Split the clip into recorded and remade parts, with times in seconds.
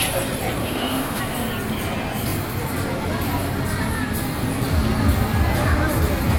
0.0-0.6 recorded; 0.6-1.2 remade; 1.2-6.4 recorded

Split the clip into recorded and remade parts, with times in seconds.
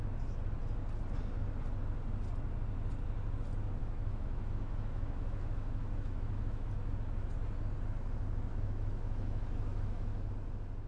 0.0-3.8 recorded; 3.8-6.7 remade; 6.7-8.5 recorded; 8.5-10.3 remade; 10.3-10.9 recorded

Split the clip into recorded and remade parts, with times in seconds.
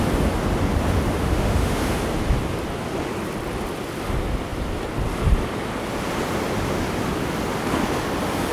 0.0-1.2 recorded; 1.2-2.0 remade; 2.0-8.5 recorded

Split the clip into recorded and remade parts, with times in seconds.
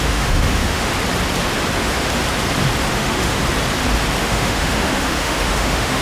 0.0-0.9 remade; 0.9-1.8 recorded; 1.8-2.2 remade; 2.2-2.9 recorded; 2.9-3.4 remade; 3.4-4.2 recorded; 4.2-6.0 remade